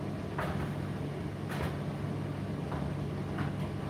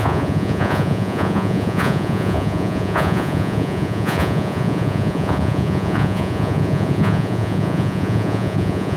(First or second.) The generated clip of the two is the second